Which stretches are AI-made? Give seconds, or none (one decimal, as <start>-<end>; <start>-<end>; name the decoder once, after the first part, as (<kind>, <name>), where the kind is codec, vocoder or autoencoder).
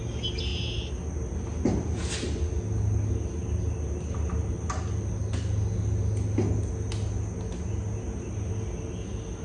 none